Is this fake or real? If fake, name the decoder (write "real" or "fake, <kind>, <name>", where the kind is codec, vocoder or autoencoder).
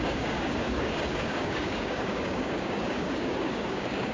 fake, codec, DAC